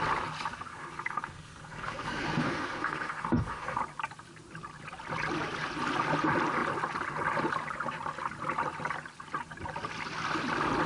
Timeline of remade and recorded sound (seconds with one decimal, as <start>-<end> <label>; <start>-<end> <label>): 0.0-0.7 recorded; 0.7-3.8 remade; 3.8-10.9 recorded